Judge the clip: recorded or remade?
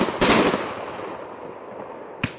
recorded